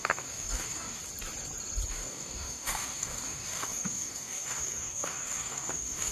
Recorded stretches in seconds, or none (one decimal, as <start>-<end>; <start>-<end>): 1.0-1.9